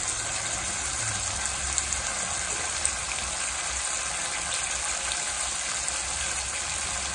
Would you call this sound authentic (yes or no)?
yes